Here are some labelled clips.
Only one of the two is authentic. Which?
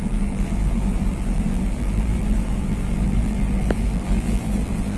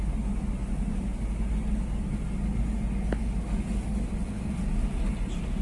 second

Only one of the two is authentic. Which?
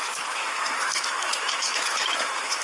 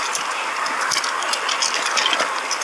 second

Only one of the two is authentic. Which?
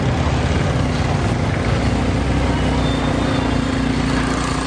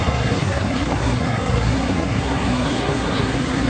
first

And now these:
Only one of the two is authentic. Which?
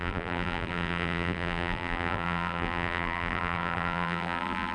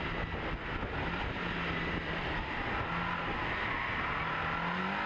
second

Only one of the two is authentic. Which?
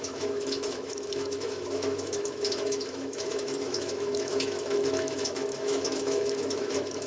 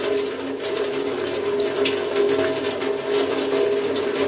second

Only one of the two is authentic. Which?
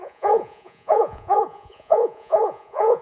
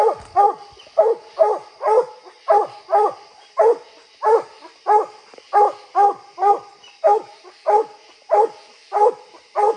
second